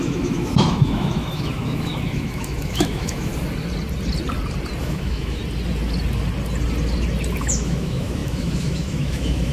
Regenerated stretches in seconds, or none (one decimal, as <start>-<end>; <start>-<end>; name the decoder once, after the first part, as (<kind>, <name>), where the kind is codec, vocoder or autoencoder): 0.0-3.3 (autoencoder, DAC-VAE); 4.8-5.4; 7.4-9.5